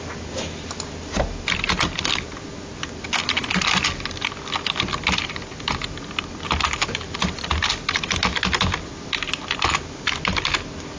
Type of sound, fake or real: real